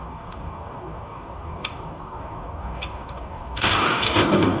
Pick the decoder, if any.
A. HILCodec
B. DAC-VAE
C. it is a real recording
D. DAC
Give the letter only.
D